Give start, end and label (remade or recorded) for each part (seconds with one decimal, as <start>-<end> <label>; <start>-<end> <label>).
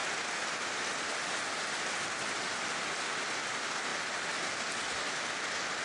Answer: 0.0-5.8 recorded